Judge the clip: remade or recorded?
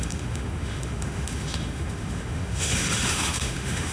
remade